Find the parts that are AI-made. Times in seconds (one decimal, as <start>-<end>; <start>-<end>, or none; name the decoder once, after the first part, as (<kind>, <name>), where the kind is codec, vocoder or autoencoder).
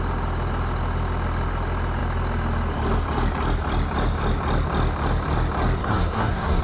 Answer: 5.8-6.6 (codec, SNAC)